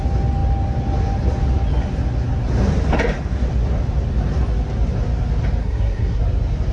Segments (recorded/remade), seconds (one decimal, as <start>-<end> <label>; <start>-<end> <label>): 0.0-5.6 recorded; 5.6-6.2 remade; 6.2-6.7 recorded